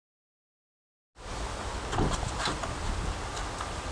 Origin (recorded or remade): recorded